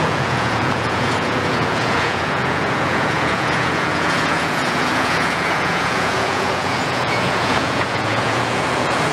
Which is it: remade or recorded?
remade